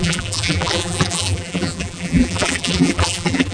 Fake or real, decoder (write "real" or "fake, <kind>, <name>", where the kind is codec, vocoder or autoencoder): fake, vocoder, BigVGAN v2